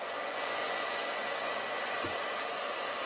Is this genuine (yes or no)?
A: no